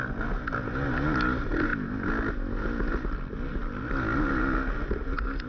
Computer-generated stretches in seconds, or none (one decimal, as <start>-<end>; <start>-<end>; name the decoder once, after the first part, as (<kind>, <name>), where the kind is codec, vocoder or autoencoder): none